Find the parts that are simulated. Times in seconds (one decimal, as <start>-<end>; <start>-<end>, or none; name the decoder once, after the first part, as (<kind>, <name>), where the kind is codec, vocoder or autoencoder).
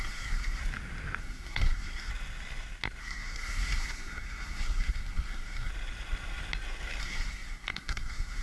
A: 0.0-0.6 (codec, SNAC); 1.2-2.1; 3.0-5.7; 7.0-8.4